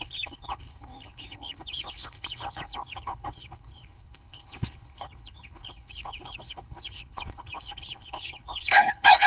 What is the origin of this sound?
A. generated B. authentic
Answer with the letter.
A